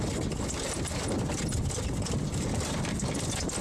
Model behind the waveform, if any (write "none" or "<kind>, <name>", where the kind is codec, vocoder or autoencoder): none